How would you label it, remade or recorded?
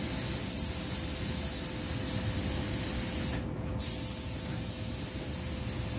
recorded